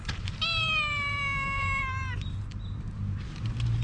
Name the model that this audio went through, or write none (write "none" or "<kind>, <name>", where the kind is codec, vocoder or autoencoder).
vocoder, BigVGAN v2